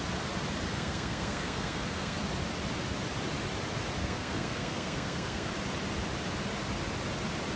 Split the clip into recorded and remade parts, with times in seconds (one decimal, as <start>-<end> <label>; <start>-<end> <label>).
0.0-0.7 recorded; 0.7-2.2 remade; 2.2-4.0 recorded; 4.0-5.5 remade; 5.5-7.6 recorded